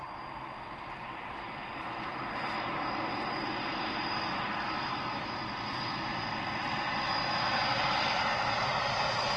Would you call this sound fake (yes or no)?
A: no